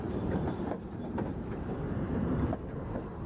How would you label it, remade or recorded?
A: remade